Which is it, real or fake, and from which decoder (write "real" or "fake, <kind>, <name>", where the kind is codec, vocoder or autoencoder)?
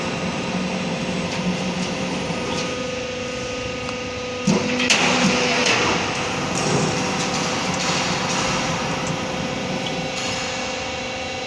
real